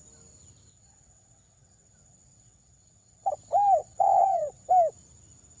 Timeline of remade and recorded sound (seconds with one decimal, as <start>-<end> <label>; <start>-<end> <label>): 0.0-0.7 recorded; 0.7-3.3 remade; 3.3-3.8 recorded; 3.8-4.7 remade; 4.7-5.6 recorded